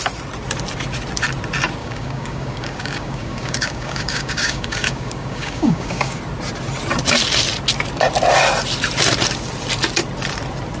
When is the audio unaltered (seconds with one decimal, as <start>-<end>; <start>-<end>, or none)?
0.0-1.8; 6.2-10.8